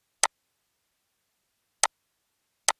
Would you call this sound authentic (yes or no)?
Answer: yes